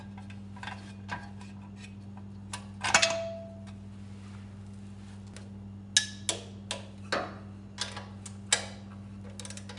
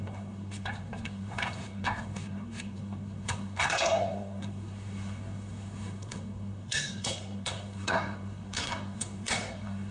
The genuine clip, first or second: first